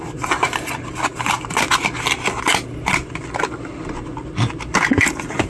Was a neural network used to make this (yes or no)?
no